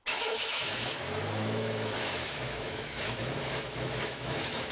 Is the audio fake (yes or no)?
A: yes